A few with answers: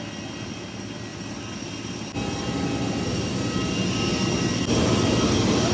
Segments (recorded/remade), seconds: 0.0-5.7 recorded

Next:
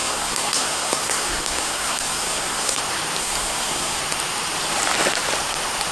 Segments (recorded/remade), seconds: 0.0-2.8 remade; 2.8-3.2 recorded; 3.2-4.0 remade; 4.0-5.9 recorded